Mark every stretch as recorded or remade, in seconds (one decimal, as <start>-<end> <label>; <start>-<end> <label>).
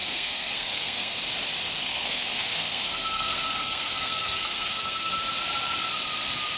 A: 0.0-1.2 remade; 1.2-1.8 recorded; 1.8-5.1 remade; 5.1-6.6 recorded